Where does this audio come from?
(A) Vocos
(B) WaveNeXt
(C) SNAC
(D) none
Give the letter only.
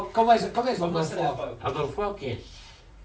A